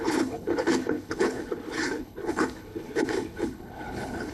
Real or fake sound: fake